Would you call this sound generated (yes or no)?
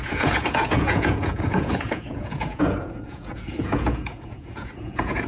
yes